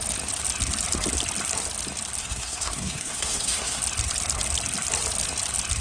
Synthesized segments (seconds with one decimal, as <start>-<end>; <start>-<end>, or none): 2.2-3.8